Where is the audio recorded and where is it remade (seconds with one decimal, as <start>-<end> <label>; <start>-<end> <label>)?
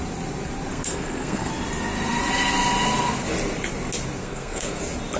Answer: 0.0-0.7 recorded; 0.7-1.5 remade; 1.5-4.2 recorded; 4.2-4.8 remade; 4.8-5.2 recorded